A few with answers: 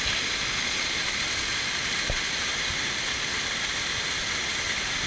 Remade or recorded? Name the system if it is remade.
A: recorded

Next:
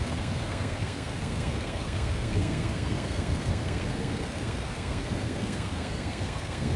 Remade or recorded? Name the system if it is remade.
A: remade, codec, SNAC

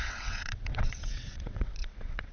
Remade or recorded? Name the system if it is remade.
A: remade, vocoder, WaveNeXt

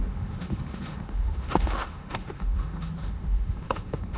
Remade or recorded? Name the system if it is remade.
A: remade, autoencoder, DAC-VAE